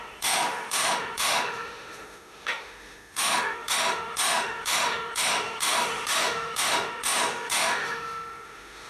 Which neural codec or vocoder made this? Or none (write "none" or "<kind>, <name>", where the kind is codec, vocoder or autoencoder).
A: autoencoder, DAC-VAE